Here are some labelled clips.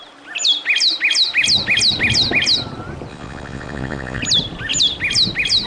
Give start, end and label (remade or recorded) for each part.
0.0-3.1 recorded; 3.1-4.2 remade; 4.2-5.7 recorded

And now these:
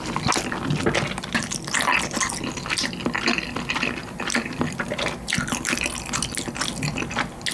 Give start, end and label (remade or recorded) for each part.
0.0-4.0 recorded; 4.0-5.0 remade; 5.0-7.5 recorded

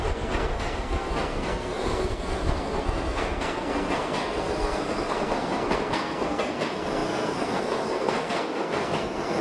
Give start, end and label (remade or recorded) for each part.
0.0-9.4 remade

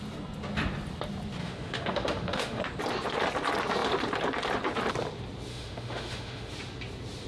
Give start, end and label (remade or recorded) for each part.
0.0-1.4 recorded; 1.4-2.6 remade; 2.6-5.5 recorded; 5.5-6.5 remade; 6.5-7.3 recorded

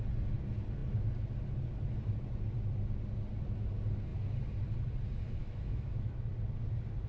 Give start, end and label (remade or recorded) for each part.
0.0-5.4 recorded; 5.4-6.3 remade; 6.3-7.1 recorded

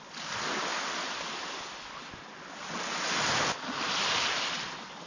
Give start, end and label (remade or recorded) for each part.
0.0-5.1 recorded